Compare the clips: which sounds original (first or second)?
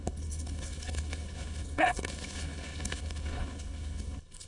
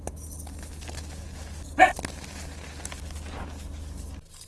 second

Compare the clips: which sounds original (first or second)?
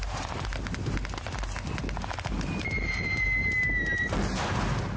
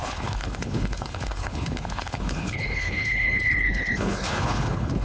first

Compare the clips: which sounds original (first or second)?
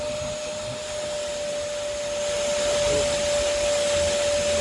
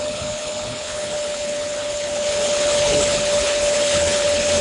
first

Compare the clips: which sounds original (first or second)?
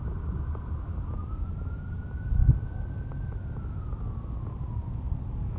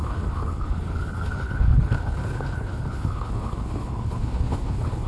first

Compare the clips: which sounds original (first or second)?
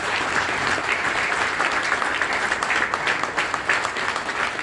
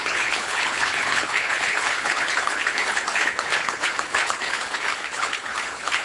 first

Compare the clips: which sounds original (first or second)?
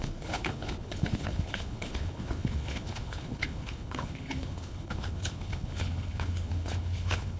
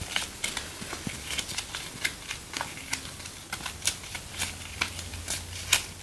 second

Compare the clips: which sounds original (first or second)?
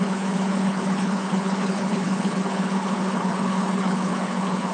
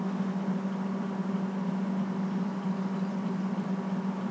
second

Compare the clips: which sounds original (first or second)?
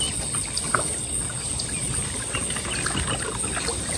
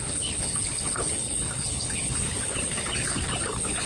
first